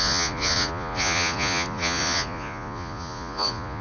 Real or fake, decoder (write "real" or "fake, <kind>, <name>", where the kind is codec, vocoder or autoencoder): fake, vocoder, Vocos